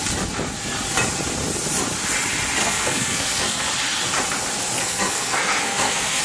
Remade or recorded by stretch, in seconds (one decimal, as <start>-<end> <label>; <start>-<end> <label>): 0.0-2.6 recorded; 2.6-3.7 remade; 3.7-4.8 recorded; 4.8-6.2 remade